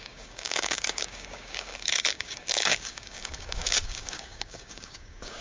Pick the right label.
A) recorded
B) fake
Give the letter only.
B